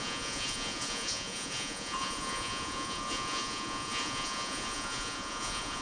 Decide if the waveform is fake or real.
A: fake